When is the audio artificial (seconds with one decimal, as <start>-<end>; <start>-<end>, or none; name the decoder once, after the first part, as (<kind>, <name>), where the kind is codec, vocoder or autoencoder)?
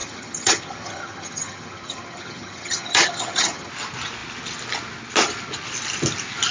0.0-3.7 (vocoder, HiFi-GAN)